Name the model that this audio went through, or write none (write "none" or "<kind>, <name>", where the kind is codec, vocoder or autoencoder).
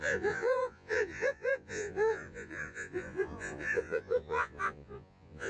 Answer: vocoder, Vocos